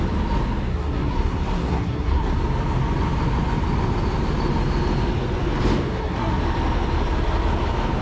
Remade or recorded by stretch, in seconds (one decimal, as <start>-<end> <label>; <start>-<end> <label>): 0.0-0.7 recorded; 0.7-2.4 remade; 2.4-5.9 recorded; 5.9-6.4 remade; 6.4-8.0 recorded